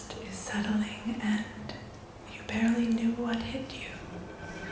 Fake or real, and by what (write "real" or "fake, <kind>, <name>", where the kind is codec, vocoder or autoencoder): real